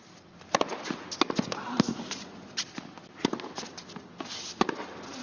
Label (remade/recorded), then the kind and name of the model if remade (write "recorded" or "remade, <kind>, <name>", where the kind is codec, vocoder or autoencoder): recorded